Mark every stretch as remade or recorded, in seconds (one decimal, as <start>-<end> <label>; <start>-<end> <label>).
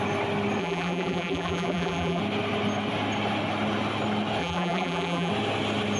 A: 0.0-0.6 recorded; 0.6-2.2 remade; 2.2-4.4 recorded; 4.4-5.3 remade; 5.3-6.0 recorded